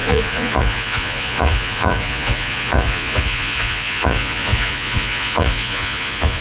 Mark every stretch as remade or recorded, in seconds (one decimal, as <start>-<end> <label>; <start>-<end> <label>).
0.0-6.4 remade